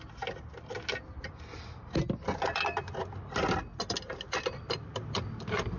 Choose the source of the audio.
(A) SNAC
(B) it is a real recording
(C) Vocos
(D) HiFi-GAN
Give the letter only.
B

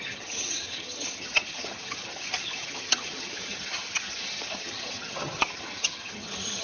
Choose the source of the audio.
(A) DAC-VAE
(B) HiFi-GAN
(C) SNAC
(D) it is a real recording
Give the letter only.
B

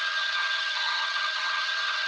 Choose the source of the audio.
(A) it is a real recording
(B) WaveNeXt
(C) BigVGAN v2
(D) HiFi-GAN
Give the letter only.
D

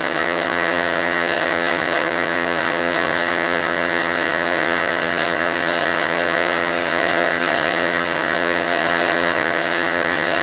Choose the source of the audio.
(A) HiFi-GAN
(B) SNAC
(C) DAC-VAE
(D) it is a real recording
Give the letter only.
A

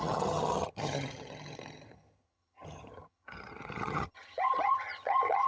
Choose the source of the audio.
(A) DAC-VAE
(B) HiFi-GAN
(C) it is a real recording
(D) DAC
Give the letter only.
B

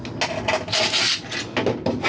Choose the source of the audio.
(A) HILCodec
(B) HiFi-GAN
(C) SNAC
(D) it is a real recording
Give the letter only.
D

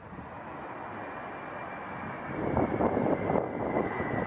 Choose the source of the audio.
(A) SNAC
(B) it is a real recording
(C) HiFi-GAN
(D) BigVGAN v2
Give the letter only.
B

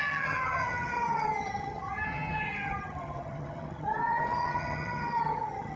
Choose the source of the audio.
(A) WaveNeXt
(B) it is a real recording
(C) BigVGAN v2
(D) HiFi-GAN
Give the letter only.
D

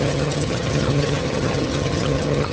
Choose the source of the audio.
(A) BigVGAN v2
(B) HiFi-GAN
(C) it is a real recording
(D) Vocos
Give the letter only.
B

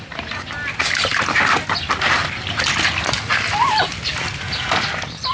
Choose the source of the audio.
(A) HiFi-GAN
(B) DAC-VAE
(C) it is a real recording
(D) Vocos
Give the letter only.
C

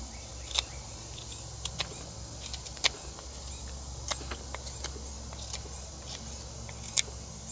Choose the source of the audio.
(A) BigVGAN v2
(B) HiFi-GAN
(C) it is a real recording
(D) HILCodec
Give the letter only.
C